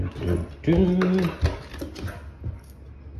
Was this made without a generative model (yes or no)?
yes